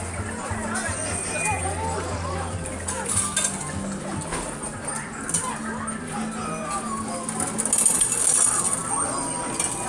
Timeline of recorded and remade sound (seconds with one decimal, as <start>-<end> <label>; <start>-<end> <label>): 0.0-9.9 recorded